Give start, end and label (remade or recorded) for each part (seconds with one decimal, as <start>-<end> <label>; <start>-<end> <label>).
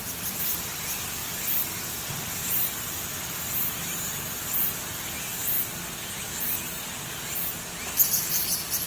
0.0-2.4 recorded; 2.4-4.8 remade; 4.8-8.9 recorded